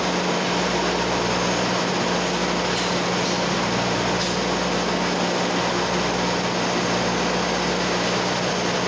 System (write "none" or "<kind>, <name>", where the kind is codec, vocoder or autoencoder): none